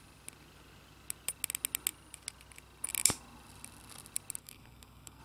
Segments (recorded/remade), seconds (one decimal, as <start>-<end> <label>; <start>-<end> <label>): 0.0-4.4 recorded; 4.4-5.2 remade